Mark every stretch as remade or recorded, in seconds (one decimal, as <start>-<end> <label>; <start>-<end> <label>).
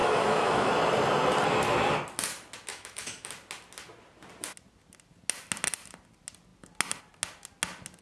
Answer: 0.0-0.7 remade; 0.7-2.7 recorded; 2.7-3.3 remade; 3.3-8.0 recorded